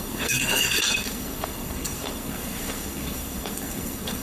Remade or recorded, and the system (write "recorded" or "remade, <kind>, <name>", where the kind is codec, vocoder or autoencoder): remade, codec, SNAC